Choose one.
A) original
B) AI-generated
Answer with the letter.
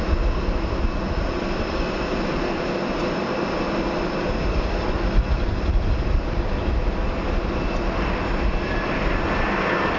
A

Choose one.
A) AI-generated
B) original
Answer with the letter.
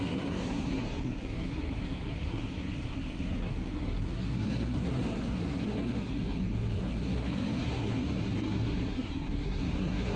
A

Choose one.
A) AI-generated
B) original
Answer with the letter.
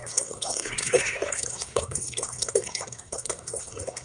A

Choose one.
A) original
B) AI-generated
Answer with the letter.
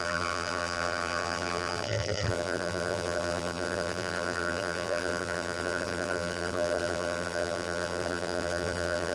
B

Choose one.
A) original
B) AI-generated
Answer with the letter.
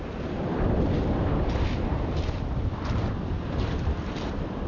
B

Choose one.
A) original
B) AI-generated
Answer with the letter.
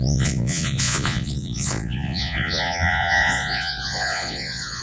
B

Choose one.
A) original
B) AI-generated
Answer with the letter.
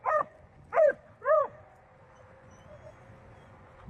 B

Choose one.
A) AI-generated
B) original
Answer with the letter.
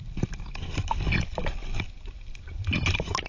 B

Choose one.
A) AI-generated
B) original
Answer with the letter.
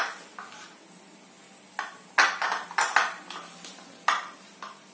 B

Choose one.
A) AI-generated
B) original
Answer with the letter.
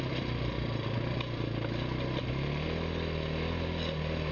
B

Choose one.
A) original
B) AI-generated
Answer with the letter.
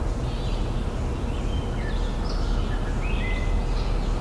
A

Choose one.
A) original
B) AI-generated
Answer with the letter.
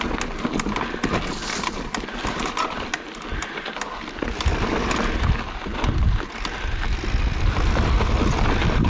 A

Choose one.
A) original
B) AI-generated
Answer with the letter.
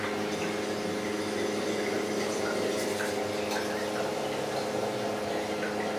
A